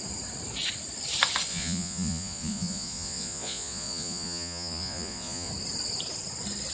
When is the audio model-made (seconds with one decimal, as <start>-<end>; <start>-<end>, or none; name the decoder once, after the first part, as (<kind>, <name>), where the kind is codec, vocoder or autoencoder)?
1.5-5.5 (vocoder, Vocos)